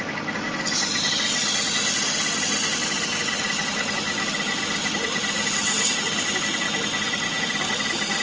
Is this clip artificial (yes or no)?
no